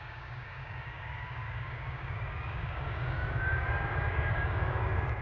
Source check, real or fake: fake